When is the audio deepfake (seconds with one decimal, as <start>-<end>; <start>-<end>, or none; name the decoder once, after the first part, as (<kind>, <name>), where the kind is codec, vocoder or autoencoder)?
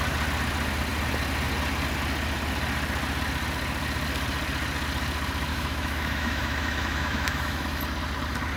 5.5-7.8 (autoencoder, DAC-VAE)